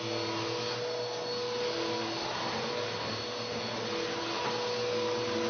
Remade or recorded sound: recorded